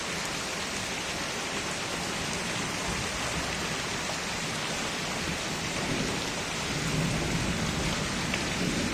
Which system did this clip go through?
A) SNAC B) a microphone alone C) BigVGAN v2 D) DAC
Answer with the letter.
B